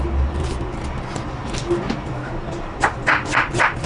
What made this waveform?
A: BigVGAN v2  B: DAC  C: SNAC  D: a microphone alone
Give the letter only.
D